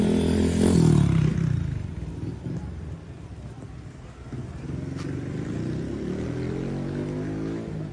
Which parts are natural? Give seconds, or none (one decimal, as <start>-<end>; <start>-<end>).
0.0-7.9